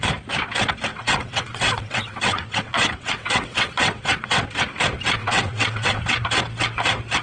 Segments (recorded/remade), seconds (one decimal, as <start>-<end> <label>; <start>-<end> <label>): 0.0-0.9 recorded; 0.9-4.4 remade; 4.4-5.2 recorded; 5.2-6.0 remade; 6.0-7.2 recorded